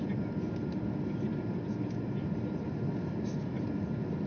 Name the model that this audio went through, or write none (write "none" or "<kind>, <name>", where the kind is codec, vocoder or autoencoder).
none